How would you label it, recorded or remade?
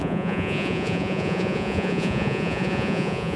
remade